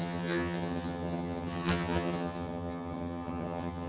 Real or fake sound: fake